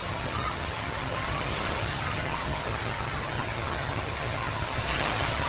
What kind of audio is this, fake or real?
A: fake